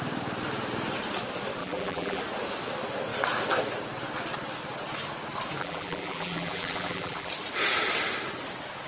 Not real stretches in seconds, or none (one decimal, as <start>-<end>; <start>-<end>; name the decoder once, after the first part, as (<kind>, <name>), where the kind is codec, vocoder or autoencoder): 1.6-2.2 (vocoder, BigVGAN v2); 5.6-7.3